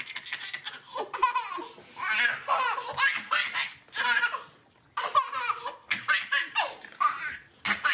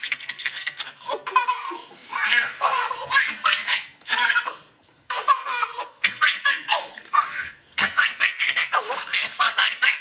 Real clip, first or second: first